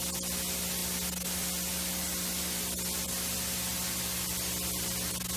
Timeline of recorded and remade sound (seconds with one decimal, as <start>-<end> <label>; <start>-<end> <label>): 0.0-5.4 recorded